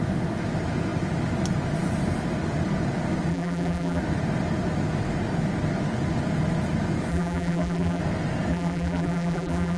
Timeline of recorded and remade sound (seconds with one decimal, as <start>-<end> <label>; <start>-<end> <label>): 0.0-3.3 recorded; 3.3-4.0 remade; 4.0-7.1 recorded; 7.1-8.0 remade; 8.0-8.5 recorded; 8.5-9.8 remade